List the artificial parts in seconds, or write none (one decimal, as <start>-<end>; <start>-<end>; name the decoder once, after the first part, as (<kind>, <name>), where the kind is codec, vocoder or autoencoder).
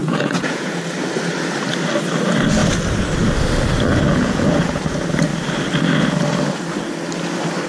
0.0-0.8 (vocoder, Vocos); 4.1-4.8